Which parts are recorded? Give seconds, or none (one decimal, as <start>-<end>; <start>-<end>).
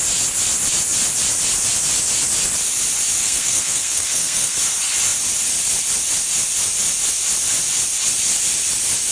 0.0-3.2; 4.6-9.1